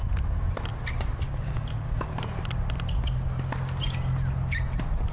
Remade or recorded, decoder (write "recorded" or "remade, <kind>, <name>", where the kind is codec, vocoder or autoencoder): recorded